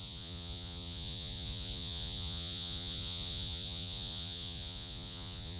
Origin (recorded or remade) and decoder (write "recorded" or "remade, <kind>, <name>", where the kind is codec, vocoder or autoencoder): remade, vocoder, Vocos